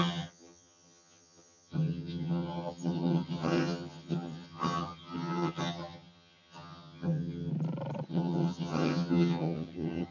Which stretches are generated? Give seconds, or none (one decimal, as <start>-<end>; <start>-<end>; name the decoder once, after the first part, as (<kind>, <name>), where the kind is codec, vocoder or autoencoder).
0.0-7.5 (vocoder, HiFi-GAN); 8.1-10.1